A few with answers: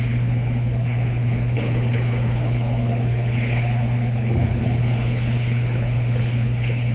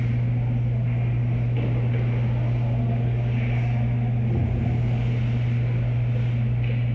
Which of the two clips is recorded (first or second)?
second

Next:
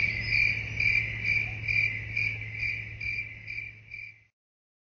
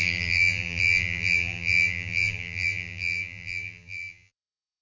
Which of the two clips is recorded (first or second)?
first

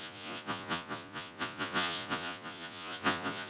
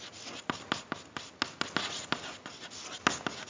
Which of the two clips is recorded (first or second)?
second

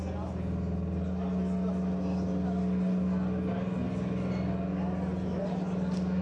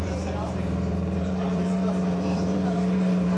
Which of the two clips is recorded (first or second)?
first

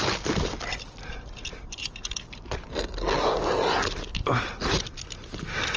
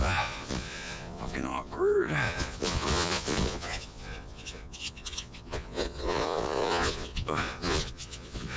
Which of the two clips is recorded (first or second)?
first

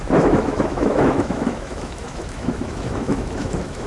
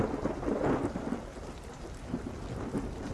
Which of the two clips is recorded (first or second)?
second